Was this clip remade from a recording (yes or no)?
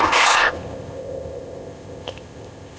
yes